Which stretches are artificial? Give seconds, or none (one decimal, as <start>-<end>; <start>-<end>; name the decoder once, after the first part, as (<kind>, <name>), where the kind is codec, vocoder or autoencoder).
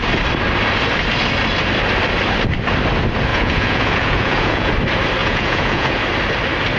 3.3-4.7 (vocoder, Vocos); 5.2-6.0